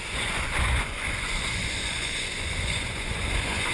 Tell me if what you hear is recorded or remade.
remade